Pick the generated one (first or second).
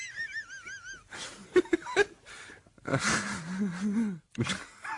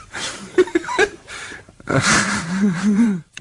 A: second